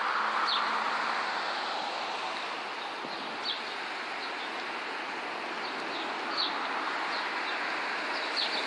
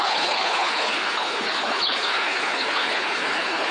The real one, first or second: first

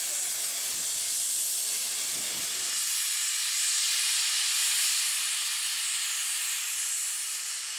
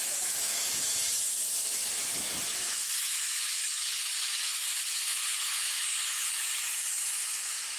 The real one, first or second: first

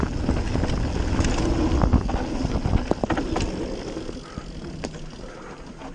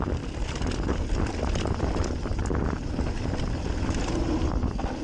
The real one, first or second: first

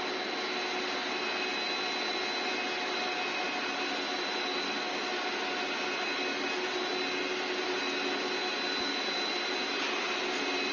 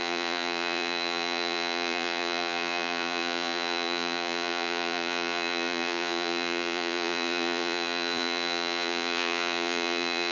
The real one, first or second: first